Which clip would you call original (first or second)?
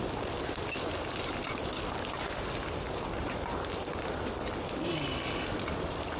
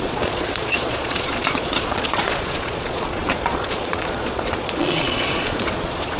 first